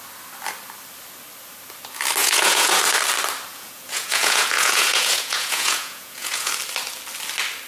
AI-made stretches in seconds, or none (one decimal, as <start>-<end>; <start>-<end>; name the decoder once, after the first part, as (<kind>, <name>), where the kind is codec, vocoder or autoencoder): 2.2-2.8 (vocoder, Vocos); 3.5-6.5